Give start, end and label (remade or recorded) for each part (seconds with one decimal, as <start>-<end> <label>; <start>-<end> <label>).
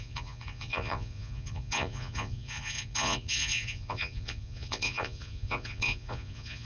0.0-6.6 remade